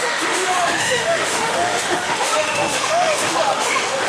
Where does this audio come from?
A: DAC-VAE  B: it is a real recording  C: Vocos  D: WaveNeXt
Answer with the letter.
A